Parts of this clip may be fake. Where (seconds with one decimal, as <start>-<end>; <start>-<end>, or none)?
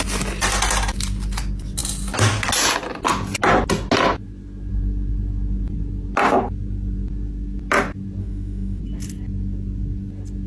8.2-8.8